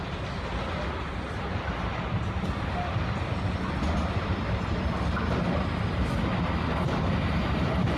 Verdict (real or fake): real